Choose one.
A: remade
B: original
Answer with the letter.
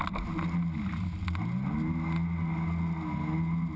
B